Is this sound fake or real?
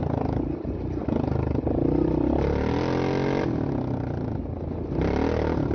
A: real